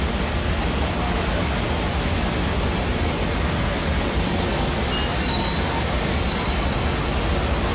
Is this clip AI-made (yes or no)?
no